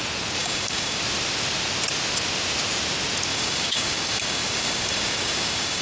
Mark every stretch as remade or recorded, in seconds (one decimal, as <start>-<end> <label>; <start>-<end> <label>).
0.0-0.4 recorded; 0.4-1.0 remade; 1.0-3.3 recorded; 3.3-5.8 remade